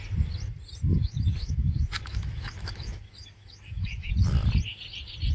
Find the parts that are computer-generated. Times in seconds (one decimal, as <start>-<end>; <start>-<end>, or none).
0.9-4.1

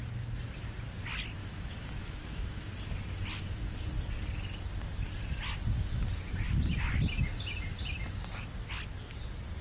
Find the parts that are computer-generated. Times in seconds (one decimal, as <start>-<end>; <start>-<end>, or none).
1.4-2.7

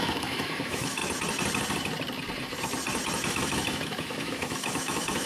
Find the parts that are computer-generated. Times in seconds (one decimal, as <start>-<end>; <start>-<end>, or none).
0.0-1.0; 3.3-5.3

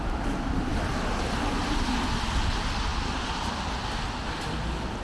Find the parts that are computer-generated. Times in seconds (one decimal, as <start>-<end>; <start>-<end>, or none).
none

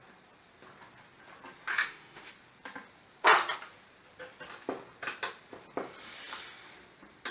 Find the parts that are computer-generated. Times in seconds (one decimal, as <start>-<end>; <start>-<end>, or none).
1.7-2.3

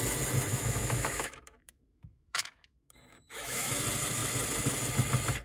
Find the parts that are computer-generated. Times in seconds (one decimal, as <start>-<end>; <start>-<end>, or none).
0.5-3.7

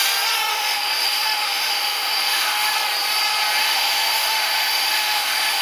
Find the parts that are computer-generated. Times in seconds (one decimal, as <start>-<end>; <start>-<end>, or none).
0.5-2.7; 3.6-5.6